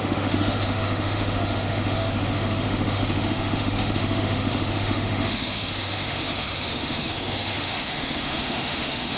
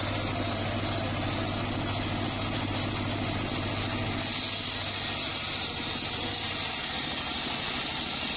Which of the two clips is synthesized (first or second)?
first